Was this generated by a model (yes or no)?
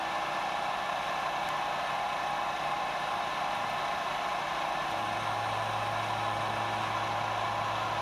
no